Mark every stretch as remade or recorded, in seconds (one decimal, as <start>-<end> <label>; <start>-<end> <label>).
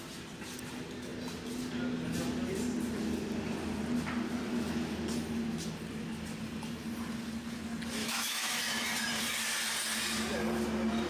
0.0-8.0 recorded; 8.0-8.6 remade; 8.6-11.1 recorded